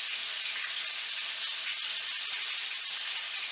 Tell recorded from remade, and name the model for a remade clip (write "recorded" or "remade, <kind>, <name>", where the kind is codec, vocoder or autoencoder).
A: recorded